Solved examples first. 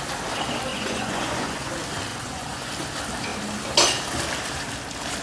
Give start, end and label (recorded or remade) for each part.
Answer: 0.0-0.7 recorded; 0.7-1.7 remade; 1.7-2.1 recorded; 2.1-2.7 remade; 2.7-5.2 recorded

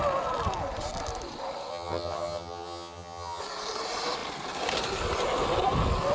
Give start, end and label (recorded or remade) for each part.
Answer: 0.0-1.7 recorded; 1.7-3.4 remade; 3.4-6.1 recorded